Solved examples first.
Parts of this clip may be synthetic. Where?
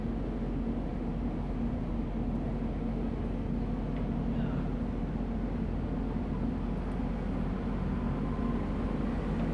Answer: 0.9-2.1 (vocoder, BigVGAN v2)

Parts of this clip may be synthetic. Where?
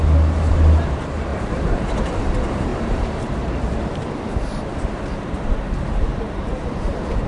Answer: 1.3-2.2 (vocoder, BigVGAN v2); 2.7-5.3; 6.1-7.3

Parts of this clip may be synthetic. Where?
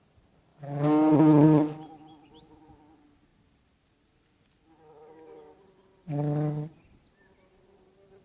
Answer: none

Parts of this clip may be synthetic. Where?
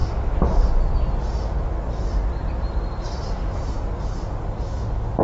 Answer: none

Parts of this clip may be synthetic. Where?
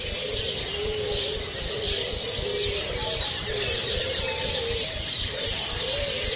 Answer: 0.7-1.6 (vocoder, BigVGAN v2)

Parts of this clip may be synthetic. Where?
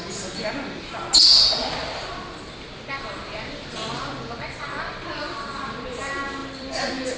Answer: 1.8-6.0 (vocoder, BigVGAN v2); 6.4-7.2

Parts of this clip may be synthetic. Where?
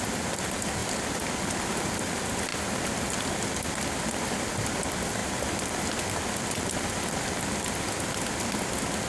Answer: none